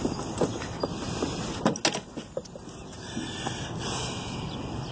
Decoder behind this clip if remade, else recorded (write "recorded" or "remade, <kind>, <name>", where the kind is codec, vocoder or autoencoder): recorded